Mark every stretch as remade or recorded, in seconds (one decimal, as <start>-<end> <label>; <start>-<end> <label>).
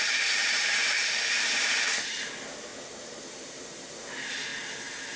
0.0-2.7 remade; 2.7-3.3 recorded; 3.3-4.5 remade; 4.5-5.2 recorded